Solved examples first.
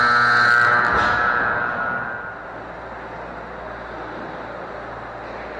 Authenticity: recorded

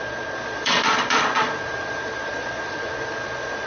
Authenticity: remade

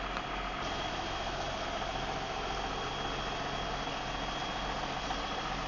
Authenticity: recorded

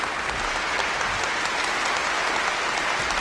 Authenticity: recorded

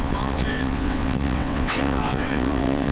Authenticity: remade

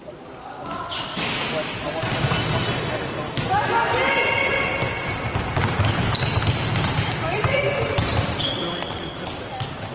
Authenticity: recorded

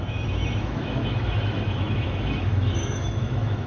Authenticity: remade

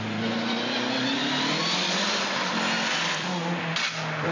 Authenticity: recorded